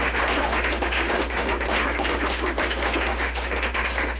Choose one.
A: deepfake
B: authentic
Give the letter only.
A